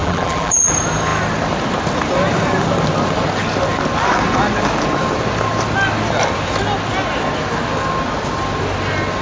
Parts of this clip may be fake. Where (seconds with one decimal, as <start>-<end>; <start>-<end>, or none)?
0.0-0.7